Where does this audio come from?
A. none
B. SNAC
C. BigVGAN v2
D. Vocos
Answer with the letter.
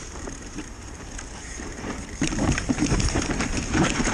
C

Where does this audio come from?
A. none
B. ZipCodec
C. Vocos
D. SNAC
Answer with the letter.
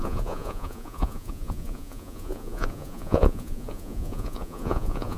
C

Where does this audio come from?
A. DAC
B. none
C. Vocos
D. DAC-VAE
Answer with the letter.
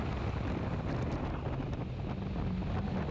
B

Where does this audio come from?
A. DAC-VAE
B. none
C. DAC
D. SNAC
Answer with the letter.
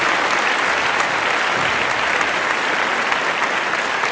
B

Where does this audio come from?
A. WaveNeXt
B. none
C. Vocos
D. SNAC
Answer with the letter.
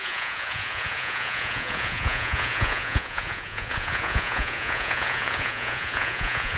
C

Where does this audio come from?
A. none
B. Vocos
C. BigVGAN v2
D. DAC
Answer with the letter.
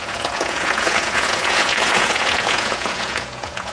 B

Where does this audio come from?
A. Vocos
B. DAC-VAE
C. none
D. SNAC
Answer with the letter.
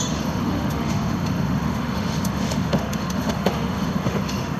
B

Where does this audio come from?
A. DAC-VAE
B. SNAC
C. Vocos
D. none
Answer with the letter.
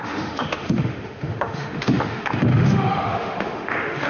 A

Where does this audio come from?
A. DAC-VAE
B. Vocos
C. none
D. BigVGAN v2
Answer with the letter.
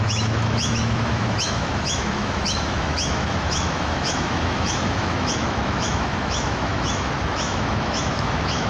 A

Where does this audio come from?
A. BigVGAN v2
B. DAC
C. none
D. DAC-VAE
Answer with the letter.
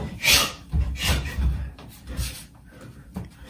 A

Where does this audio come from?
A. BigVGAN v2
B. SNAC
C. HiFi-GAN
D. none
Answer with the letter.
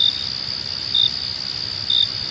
D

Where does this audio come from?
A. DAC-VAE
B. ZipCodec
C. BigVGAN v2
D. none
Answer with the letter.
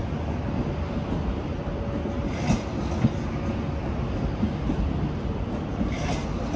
D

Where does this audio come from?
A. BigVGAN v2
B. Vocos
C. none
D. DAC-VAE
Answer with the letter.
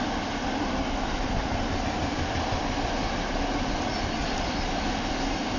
C